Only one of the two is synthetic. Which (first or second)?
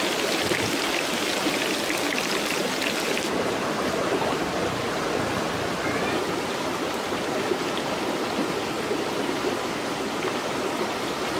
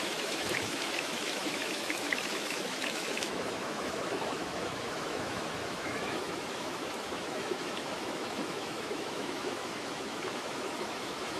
second